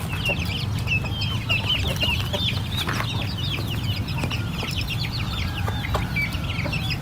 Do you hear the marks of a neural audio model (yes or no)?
no